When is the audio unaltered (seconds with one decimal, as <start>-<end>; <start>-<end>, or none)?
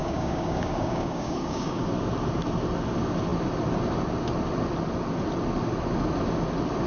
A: 1.8-6.9